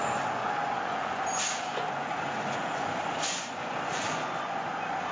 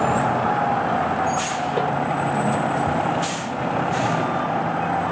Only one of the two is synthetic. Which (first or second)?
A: first